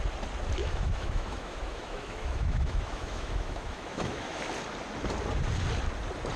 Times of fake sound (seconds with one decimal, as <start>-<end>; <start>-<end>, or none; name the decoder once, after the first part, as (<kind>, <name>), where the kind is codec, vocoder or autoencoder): 0.6-4.4 (autoencoder, DAC-VAE)